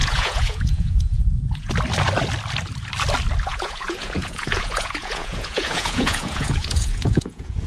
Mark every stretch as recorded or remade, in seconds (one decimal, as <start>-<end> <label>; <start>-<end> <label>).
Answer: 0.0-1.7 remade; 1.7-3.5 recorded; 3.5-7.7 remade

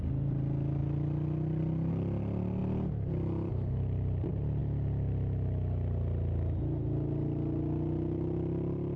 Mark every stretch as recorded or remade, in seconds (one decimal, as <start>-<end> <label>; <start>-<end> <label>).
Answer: 0.0-9.0 recorded

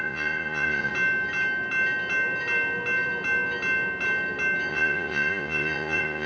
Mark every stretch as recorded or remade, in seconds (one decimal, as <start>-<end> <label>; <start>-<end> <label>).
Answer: 0.0-0.9 remade; 0.9-4.7 recorded; 4.7-6.3 remade

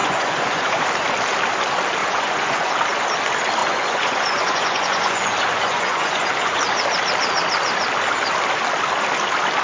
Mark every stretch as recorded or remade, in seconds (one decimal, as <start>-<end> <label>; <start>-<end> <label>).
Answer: 0.0-0.8 remade; 0.8-2.0 recorded; 2.0-2.7 remade; 2.7-3.6 recorded; 3.6-6.6 remade; 6.6-9.6 recorded

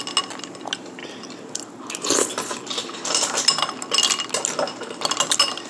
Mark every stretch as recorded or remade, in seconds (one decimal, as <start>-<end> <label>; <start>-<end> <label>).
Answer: 0.0-5.7 recorded

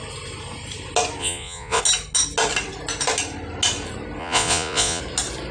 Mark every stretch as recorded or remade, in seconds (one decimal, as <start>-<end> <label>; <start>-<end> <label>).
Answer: 0.0-1.2 recorded; 1.2-1.8 remade; 1.8-4.2 recorded; 4.2-5.0 remade; 5.0-5.5 recorded

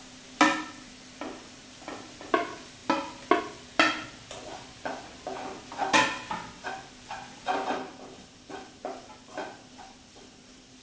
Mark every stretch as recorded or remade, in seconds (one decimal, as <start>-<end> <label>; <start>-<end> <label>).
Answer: 0.0-10.8 recorded